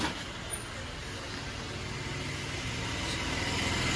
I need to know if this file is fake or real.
real